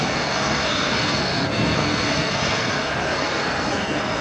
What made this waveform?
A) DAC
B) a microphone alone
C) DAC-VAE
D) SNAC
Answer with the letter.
D